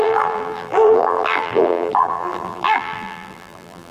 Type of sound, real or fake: fake